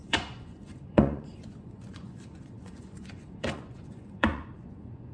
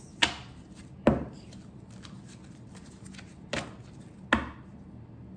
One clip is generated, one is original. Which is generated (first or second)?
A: first